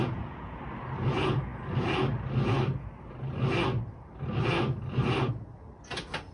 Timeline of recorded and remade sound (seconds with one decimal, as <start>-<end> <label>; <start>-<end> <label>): 0.0-0.6 remade; 0.6-6.3 recorded